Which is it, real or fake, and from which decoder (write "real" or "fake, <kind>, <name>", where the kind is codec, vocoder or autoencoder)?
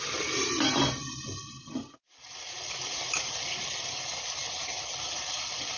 real